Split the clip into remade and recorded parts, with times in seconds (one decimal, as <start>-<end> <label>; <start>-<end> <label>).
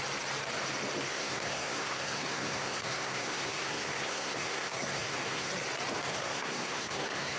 0.0-1.1 recorded; 1.1-5.5 remade; 5.5-6.1 recorded; 6.1-7.4 remade